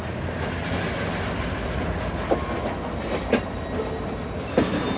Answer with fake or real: real